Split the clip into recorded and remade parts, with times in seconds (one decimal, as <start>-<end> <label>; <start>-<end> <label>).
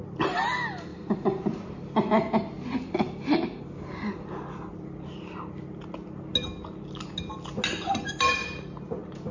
0.0-9.3 recorded